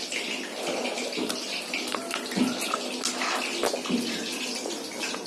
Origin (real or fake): real